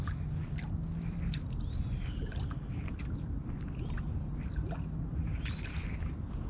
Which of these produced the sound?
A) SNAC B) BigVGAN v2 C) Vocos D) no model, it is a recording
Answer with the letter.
D